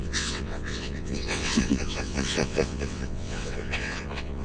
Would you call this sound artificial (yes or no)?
yes